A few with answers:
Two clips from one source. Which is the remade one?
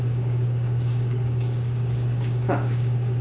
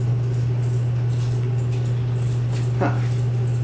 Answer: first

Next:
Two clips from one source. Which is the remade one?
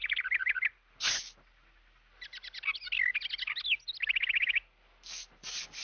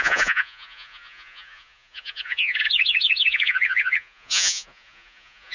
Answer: second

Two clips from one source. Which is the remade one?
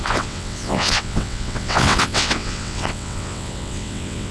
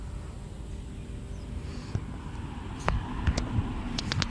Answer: first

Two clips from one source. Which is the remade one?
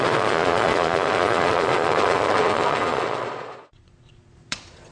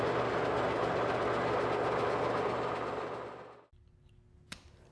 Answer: first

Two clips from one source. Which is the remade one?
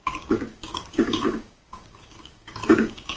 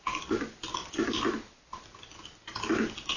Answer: first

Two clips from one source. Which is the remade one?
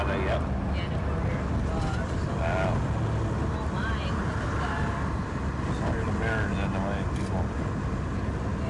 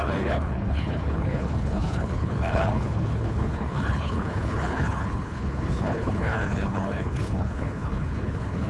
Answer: second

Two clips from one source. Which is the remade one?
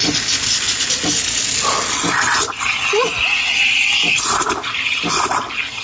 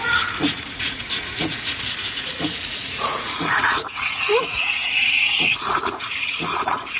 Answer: second